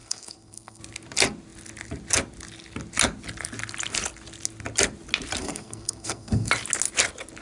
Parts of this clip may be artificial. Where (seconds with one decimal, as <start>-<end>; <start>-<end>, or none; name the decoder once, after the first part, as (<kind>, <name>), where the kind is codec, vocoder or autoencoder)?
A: 0.0-0.8 (codec, SNAC); 5.4-6.5